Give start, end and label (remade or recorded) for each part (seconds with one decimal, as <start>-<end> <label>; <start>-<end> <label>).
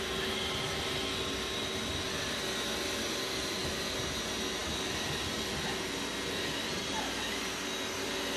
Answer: 0.0-8.4 recorded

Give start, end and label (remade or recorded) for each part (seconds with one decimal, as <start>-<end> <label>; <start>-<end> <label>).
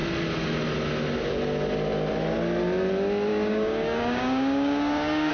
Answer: 0.0-3.3 recorded; 3.3-5.3 remade